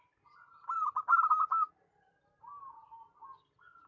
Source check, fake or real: real